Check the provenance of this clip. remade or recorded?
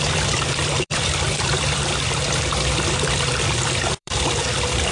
remade